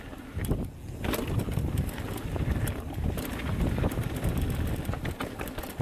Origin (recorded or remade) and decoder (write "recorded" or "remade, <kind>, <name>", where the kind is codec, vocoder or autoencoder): recorded